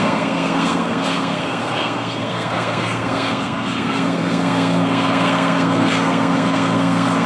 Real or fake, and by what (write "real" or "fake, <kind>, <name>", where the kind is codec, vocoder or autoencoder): fake, codec, SNAC